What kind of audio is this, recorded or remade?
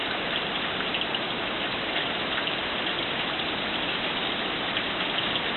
recorded